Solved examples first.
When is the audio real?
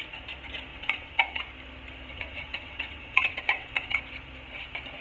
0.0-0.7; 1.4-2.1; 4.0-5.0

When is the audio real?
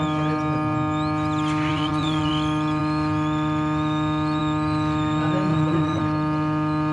0.0-1.7; 2.3-5.5; 6.0-6.9